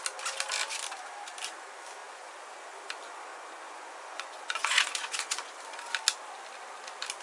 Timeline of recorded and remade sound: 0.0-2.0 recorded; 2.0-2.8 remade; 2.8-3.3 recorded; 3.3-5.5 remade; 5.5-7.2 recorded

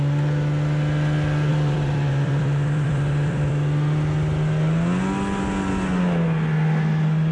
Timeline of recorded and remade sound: 0.0-1.5 recorded; 1.5-3.5 remade; 3.5-7.3 recorded

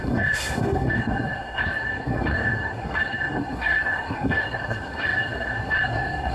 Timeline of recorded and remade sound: 0.0-6.3 remade

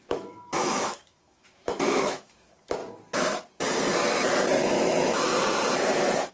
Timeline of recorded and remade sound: 0.0-2.8 remade; 2.8-4.6 recorded; 4.6-5.3 remade; 5.3-6.3 recorded

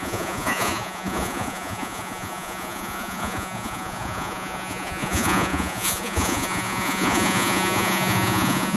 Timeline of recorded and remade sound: 0.0-8.8 remade

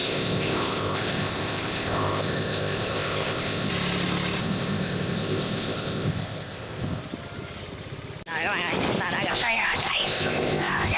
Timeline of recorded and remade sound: 0.0-3.7 remade; 3.7-4.4 recorded; 4.4-7.0 remade; 7.0-9.3 recorded; 9.3-11.0 remade

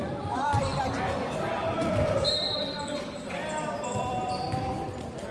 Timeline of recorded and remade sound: 0.0-0.7 remade; 0.7-1.2 recorded; 1.2-5.3 remade

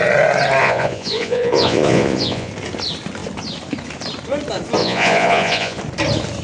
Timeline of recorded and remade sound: 0.0-0.6 recorded; 0.6-2.5 remade; 2.5-4.8 recorded; 4.8-5.8 remade; 5.8-6.4 recorded